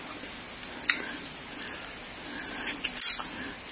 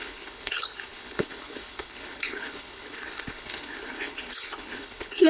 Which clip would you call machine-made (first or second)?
second